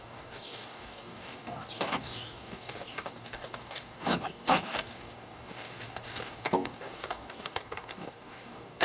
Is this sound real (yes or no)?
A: no